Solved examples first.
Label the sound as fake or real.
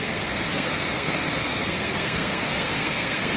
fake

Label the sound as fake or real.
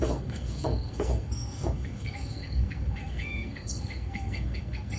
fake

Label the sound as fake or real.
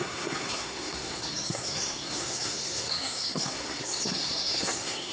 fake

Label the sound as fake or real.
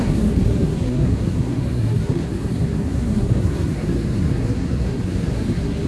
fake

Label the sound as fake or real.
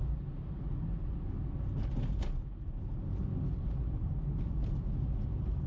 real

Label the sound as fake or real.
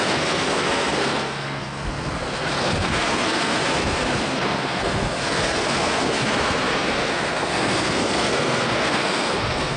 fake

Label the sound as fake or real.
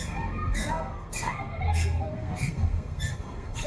fake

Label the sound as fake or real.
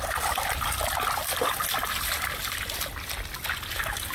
real